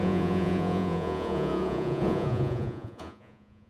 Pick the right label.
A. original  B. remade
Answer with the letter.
B